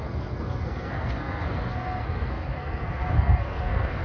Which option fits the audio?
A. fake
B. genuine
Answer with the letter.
A